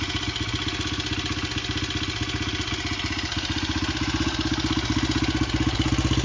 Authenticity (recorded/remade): recorded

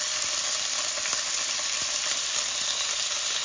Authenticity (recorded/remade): recorded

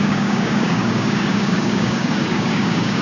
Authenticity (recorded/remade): remade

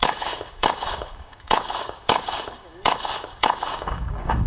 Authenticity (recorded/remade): remade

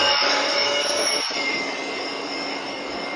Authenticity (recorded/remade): remade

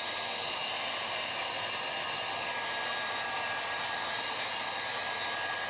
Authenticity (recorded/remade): recorded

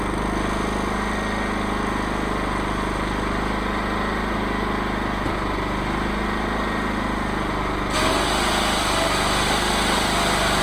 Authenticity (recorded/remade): recorded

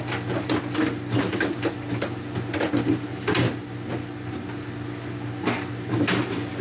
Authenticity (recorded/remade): recorded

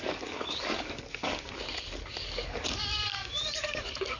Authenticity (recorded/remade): remade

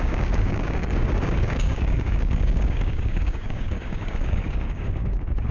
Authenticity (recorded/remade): remade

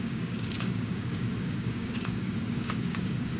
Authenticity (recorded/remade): remade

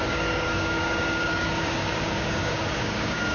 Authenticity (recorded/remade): remade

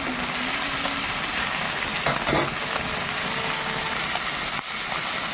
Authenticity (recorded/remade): recorded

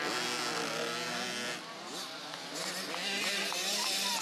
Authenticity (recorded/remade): recorded